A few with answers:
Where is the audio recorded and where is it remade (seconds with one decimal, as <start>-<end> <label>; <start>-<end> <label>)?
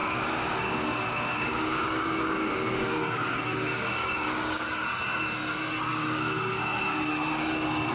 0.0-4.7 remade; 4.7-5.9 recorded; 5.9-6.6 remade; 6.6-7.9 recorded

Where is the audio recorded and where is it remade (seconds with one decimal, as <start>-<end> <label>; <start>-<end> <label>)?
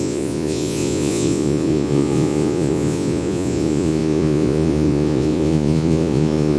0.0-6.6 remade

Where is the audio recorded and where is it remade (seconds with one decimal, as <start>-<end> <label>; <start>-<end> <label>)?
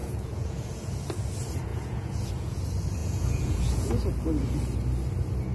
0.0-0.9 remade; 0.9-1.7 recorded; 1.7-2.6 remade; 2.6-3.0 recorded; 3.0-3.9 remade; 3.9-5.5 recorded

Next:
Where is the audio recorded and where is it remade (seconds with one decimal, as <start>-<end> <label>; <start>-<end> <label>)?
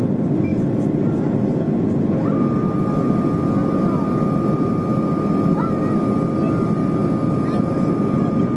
0.0-8.6 recorded